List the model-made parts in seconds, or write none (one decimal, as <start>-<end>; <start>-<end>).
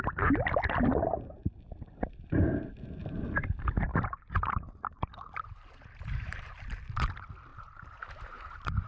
3.0-7.1; 7.5-8.9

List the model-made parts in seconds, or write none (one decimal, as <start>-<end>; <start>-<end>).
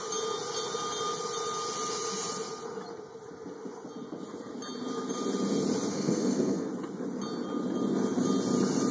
5.9-6.7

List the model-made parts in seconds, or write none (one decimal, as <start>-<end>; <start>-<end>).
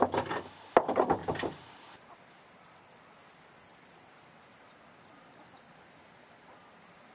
none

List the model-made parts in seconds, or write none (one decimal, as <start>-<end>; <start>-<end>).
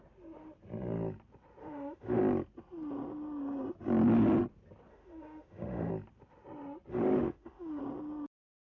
1.6-2.2; 4.9-5.9; 6.9-7.8